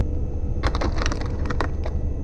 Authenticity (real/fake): real